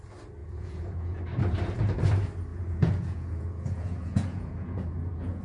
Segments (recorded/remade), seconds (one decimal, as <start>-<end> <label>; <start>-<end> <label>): 0.0-0.4 recorded; 0.4-1.2 remade; 1.2-2.5 recorded; 2.5-5.4 remade

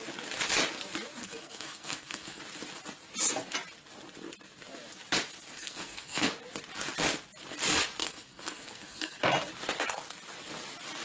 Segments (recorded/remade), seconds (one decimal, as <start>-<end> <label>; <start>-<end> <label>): 0.0-1.2 recorded; 1.2-2.4 remade; 2.4-5.6 recorded; 5.6-6.3 remade; 6.3-8.0 recorded; 8.0-9.2 remade; 9.2-11.0 recorded